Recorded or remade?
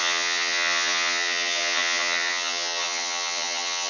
remade